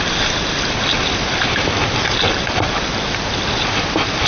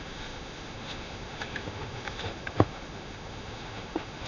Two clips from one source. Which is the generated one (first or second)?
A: second